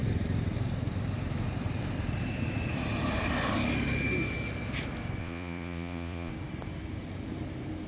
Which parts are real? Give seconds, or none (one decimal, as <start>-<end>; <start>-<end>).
0.0-5.2; 6.3-7.9